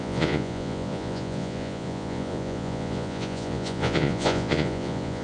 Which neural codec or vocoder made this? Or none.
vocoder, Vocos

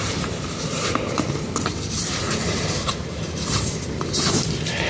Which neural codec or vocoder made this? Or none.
vocoder, BigVGAN v2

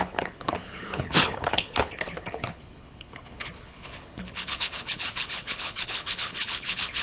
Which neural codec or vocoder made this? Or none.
codec, HILCodec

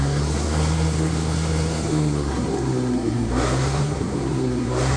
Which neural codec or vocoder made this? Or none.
codec, SNAC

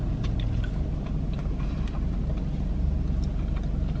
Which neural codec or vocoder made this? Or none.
none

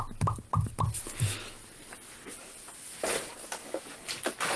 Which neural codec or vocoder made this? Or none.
none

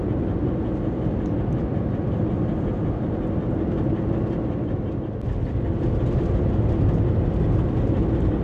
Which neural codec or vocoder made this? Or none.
none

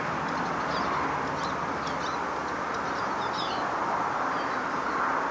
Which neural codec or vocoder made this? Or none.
none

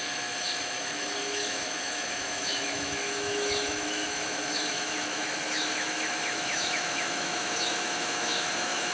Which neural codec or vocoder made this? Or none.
autoencoder, DAC-VAE